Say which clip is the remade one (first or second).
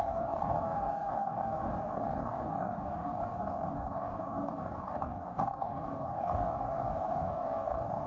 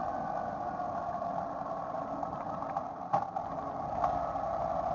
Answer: first